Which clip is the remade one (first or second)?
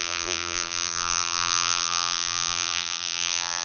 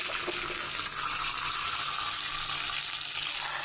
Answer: first